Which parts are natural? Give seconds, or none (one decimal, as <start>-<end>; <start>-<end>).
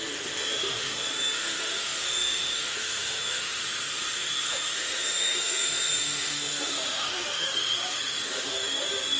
none